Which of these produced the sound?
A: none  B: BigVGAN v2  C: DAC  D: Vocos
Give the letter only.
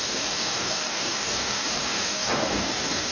C